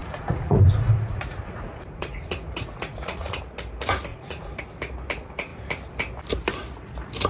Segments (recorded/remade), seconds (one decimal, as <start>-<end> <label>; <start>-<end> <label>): 0.0-3.4 remade; 3.4-4.1 recorded; 4.1-4.6 remade; 4.6-7.3 recorded